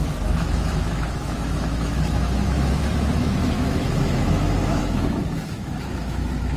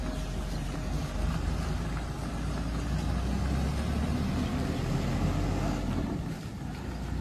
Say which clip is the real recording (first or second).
second